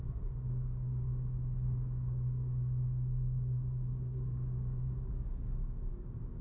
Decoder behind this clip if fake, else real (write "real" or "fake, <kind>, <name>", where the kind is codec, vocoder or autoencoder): fake, codec, DAC